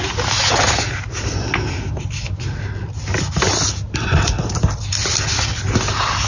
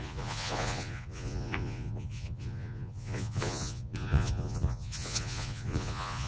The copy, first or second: second